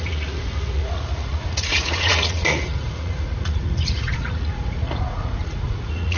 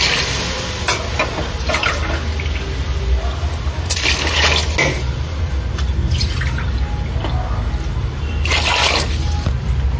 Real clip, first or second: second